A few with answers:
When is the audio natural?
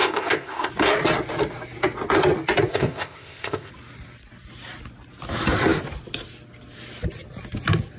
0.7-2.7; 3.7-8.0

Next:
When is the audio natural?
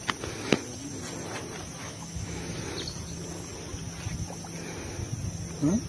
0.0-1.8; 2.6-5.9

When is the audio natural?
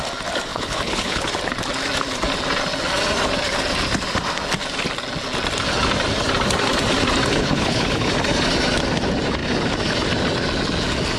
0.0-0.5; 1.3-7.3; 8.1-11.2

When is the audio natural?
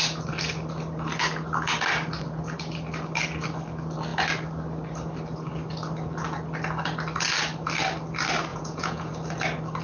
0.0-8.5; 9.1-9.8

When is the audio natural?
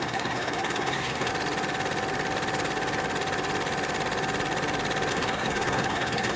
1.3-5.1